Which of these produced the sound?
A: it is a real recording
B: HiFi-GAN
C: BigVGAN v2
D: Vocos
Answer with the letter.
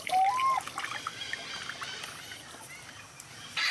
A